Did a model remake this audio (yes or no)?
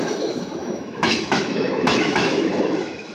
yes